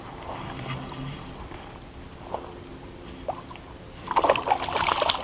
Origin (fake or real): real